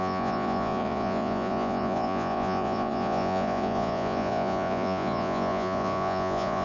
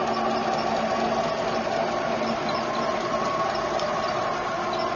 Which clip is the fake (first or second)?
first